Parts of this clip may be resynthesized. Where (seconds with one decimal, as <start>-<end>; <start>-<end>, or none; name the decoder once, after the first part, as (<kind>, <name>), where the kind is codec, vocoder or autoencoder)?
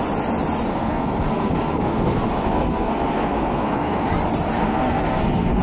0.7-4.1 (codec, SNAC); 4.6-5.6